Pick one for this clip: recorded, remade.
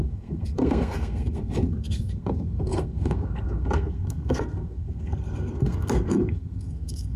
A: remade